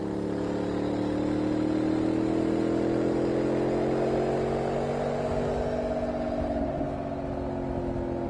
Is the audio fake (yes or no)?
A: no